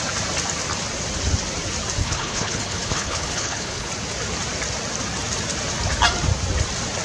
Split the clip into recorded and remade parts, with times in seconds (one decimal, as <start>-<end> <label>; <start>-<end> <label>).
0.0-2.0 recorded; 2.0-3.9 remade; 3.9-7.0 recorded

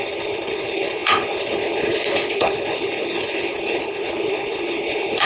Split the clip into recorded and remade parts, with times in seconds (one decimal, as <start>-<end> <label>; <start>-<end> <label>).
0.0-5.2 remade

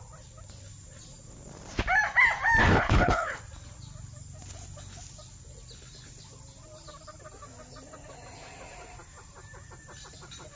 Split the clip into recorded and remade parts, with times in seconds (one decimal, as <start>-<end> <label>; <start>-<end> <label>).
0.0-2.6 recorded; 2.6-3.4 remade; 3.4-10.6 recorded

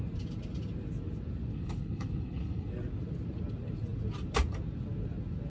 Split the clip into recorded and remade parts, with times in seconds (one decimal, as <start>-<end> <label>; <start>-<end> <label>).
0.0-1.5 recorded; 1.5-2.7 remade; 2.7-5.5 recorded

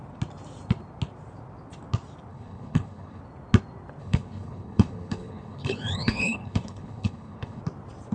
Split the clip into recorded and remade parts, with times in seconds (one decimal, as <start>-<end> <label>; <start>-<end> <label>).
0.0-2.3 recorded; 2.3-3.2 remade; 3.2-4.0 recorded; 4.0-7.6 remade; 7.6-8.1 recorded

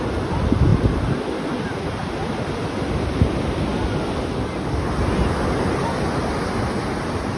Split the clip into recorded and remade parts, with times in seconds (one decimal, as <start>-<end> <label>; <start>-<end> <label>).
0.0-7.4 recorded

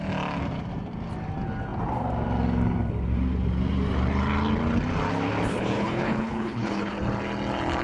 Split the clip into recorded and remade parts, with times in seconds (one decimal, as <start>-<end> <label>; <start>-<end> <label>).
0.0-5.5 recorded; 5.5-6.9 remade; 6.9-7.8 recorded

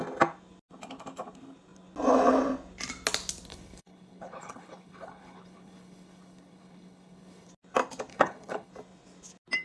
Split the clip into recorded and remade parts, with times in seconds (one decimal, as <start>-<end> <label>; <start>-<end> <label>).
0.0-3.5 recorded; 3.5-7.5 remade; 7.5-8.1 recorded; 8.1-8.7 remade; 8.7-9.6 recorded